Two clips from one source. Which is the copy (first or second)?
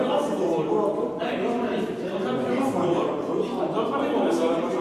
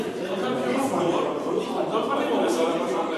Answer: second